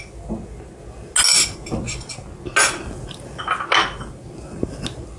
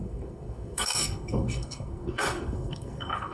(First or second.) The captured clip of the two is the first